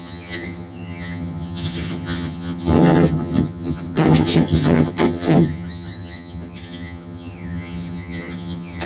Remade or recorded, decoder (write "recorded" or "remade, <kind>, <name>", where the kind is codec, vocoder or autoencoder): remade, vocoder, HiFi-GAN